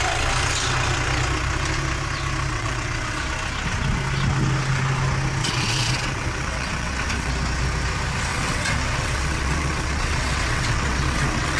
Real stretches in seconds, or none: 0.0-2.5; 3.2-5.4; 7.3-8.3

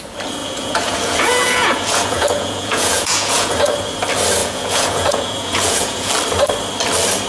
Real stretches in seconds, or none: 0.0-0.4; 3.5-4.4; 6.1-7.3